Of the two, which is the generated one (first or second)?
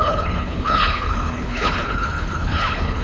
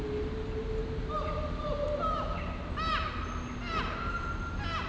first